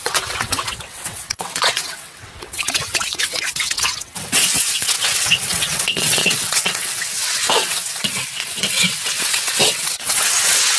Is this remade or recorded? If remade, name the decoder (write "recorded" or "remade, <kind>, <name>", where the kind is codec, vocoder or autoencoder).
remade, vocoder, WaveNeXt